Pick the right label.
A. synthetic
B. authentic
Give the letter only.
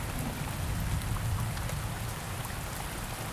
B